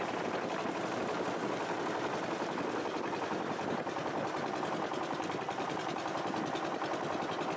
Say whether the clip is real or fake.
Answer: real